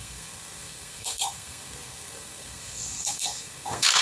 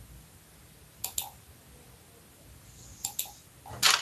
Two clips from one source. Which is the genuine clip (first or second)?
second